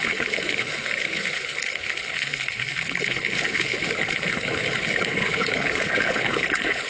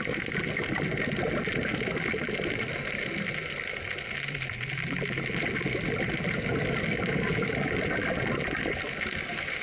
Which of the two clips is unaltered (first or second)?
second